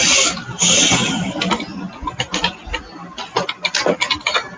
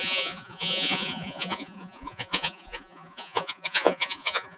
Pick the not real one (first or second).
second